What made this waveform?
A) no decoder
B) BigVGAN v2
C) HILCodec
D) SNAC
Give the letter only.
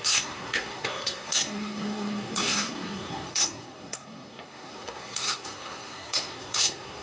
D